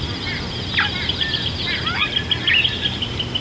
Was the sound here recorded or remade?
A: recorded